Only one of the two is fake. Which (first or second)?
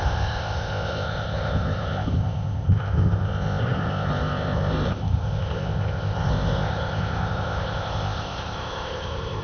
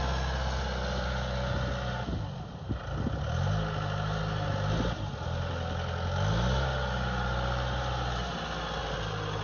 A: first